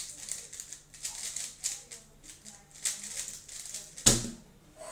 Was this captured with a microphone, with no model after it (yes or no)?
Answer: yes